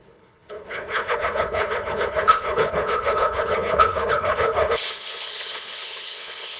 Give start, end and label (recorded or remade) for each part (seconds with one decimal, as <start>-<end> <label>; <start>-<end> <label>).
0.0-6.6 remade